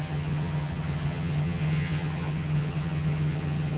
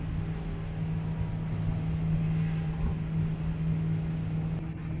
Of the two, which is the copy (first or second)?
first